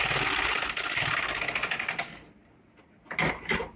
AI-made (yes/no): no